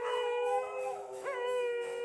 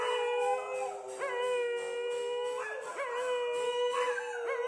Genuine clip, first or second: second